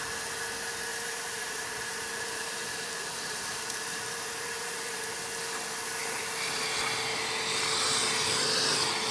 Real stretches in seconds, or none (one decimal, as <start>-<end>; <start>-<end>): 0.0-0.9; 5.1-9.1